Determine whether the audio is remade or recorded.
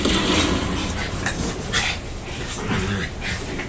recorded